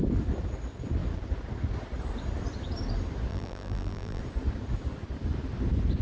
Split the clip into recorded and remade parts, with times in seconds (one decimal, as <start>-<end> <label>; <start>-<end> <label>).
0.0-3.3 recorded; 3.3-4.2 remade; 4.2-6.0 recorded